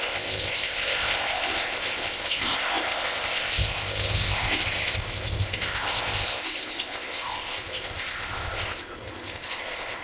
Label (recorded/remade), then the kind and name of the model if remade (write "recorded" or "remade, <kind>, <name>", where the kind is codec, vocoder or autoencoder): remade, codec, ZipCodec